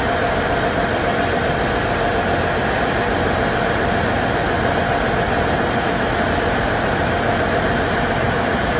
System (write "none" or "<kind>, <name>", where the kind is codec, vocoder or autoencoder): none